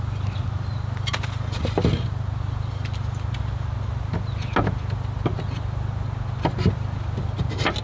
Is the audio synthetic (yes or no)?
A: no